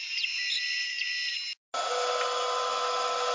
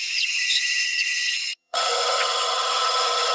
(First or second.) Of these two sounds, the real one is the first